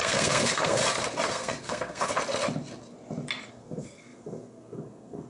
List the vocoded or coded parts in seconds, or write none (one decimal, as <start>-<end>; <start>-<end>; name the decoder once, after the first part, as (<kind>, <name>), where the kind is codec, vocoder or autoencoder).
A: 0.0-0.8 (codec, SNAC); 1.3-2.1; 3.5-5.3